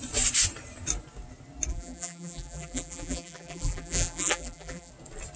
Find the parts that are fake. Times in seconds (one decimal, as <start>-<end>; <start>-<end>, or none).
1.7-4.9